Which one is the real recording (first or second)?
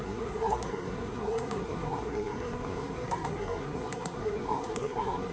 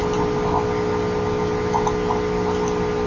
second